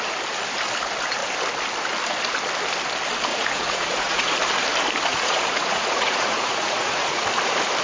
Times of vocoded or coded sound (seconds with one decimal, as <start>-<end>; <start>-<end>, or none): 3.3-4.4; 5.1-7.2